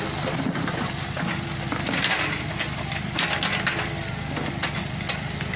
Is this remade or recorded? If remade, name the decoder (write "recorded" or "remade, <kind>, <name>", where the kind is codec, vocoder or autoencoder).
recorded